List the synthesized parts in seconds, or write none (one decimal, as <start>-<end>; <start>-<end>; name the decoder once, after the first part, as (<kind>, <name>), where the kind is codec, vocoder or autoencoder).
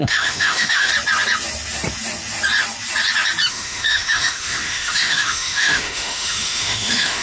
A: 0.0-0.9 (autoencoder, DAC-VAE); 3.5-7.2